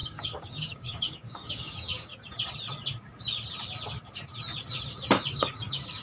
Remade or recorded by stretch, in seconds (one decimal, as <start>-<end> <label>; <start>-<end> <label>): 0.0-2.1 remade; 2.1-5.3 recorded; 5.3-6.0 remade